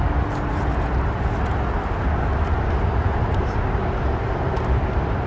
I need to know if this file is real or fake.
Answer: real